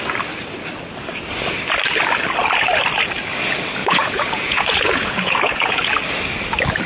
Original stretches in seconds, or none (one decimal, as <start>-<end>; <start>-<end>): 0.0-3.8; 5.8-6.9